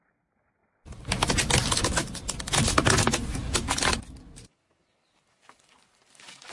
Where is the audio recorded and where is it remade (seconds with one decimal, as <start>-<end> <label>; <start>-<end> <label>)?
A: 0.0-6.5 recorded